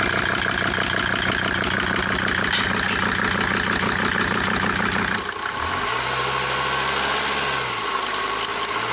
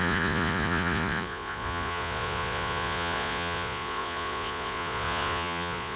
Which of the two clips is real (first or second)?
first